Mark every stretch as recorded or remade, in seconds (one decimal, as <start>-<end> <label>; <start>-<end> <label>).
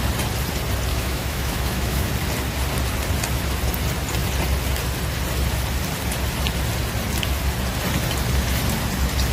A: 0.0-0.9 recorded; 0.9-2.1 remade; 2.1-9.3 recorded